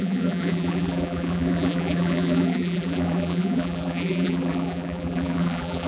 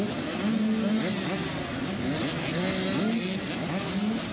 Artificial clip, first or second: first